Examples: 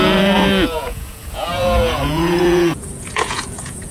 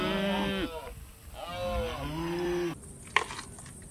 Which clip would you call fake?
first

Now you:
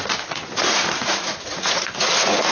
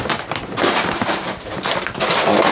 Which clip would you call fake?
first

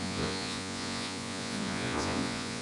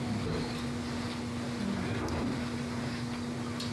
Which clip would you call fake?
first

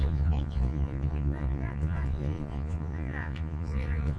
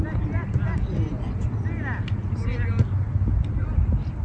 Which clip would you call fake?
first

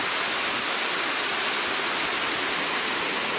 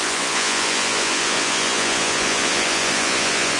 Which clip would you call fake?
second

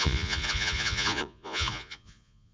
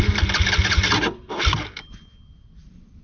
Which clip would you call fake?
first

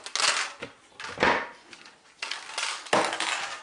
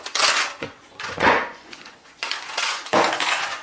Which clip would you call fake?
second